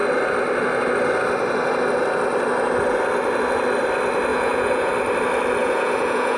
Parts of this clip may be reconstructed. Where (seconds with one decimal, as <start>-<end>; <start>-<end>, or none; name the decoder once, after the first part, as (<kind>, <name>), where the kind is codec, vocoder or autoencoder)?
4.3-4.9 (vocoder, Vocos); 5.6-6.4